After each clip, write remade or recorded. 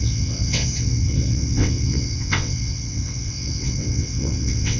remade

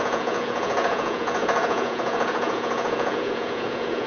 remade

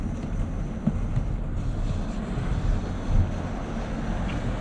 recorded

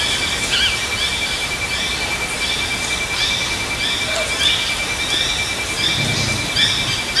recorded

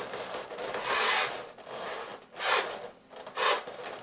recorded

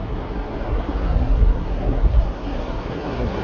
remade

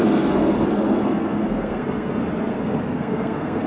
remade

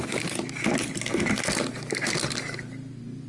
recorded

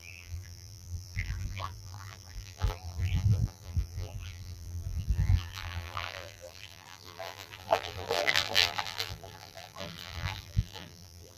remade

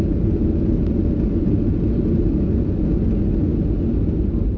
recorded